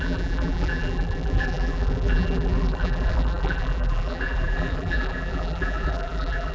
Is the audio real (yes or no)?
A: no